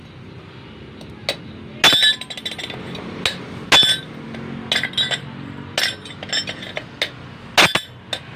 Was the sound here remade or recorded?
recorded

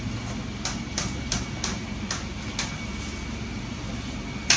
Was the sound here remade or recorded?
recorded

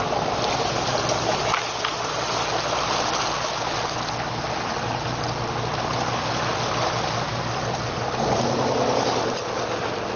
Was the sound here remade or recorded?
recorded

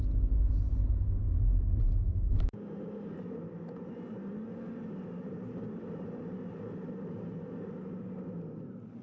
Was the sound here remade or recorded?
recorded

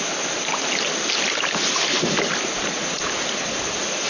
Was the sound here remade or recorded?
recorded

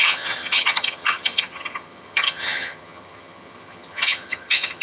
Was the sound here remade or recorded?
remade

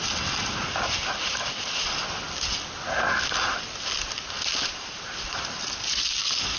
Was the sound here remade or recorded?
recorded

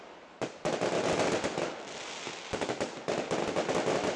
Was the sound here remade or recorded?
recorded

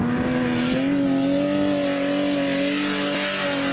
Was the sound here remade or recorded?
recorded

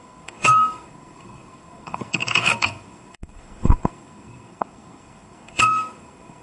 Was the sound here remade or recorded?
remade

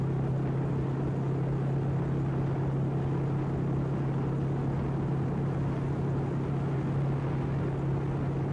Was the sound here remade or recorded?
recorded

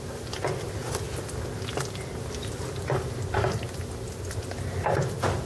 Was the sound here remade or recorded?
recorded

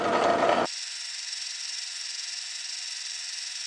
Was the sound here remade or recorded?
recorded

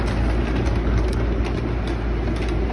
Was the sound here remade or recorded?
recorded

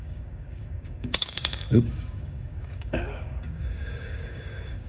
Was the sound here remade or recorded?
remade